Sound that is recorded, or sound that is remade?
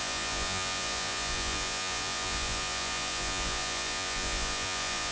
remade